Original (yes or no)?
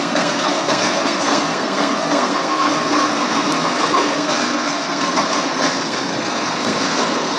no